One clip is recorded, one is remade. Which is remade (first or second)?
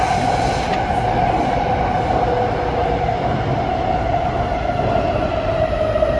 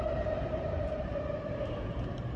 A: second